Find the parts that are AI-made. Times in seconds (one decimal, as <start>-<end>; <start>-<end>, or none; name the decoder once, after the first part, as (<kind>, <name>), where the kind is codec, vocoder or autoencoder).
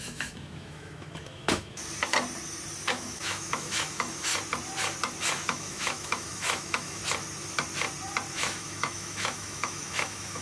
0.0-1.8 (autoencoder, DAC-VAE); 2.9-4.3; 5.2-7.0; 8.3-10.4